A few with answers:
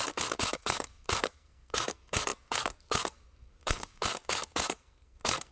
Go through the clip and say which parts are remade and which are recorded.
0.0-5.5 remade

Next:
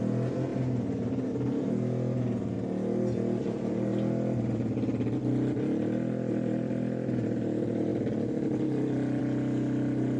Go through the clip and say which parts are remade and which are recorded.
0.0-10.2 recorded

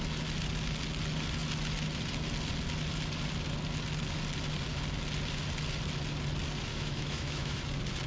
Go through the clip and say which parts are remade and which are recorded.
0.0-6.7 recorded; 6.7-7.6 remade; 7.6-8.1 recorded

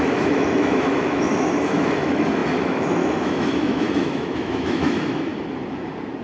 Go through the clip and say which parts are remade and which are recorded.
0.0-5.3 remade; 5.3-6.2 recorded

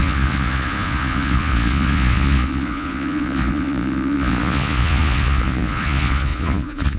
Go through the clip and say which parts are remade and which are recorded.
0.0-7.0 remade